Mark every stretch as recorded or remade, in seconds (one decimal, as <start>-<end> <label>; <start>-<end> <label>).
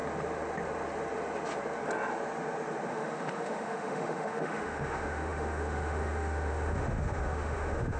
0.0-2.9 recorded; 2.9-8.0 remade